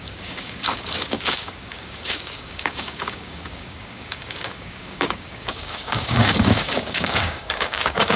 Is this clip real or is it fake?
fake